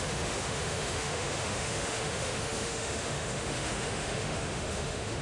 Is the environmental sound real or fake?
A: fake